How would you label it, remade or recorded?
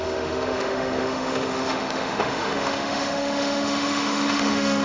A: remade